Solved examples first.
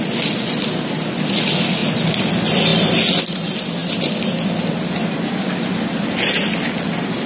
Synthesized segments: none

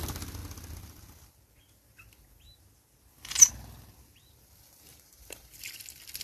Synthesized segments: 4.9-5.5 (vocoder, BigVGAN v2)

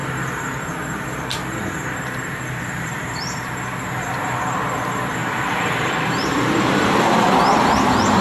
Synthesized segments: 0.0-3.4 (vocoder, BigVGAN v2); 5.2-8.2

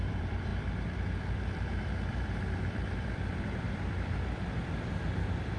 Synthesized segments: 0.0-5.6 (vocoder, BigVGAN v2)

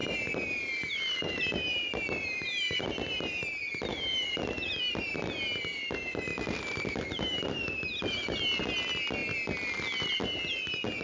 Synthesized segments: 3.9-5.1 (vocoder, BigVGAN v2)

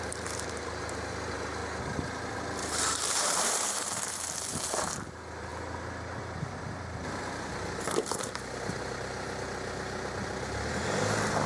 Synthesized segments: 0.0-1.6 (vocoder, BigVGAN v2); 2.6-5.5; 6.2-11.5

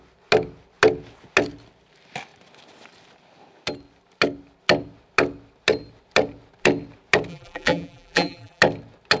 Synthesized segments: 7.3-8.6 (vocoder, BigVGAN v2)